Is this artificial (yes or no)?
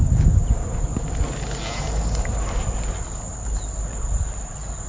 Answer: no